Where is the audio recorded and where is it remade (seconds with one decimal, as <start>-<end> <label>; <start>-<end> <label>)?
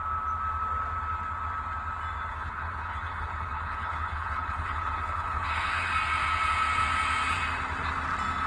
0.0-2.3 recorded; 2.3-5.9 remade; 5.9-8.5 recorded